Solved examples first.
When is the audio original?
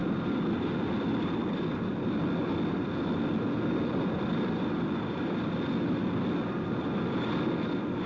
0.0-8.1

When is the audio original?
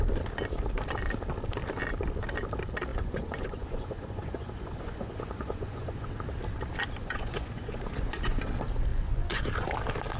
0.0-2.9; 6.1-7.0; 8.5-8.9; 9.4-10.2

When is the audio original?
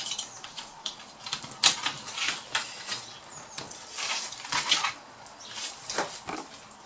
0.0-0.5; 1.0-6.9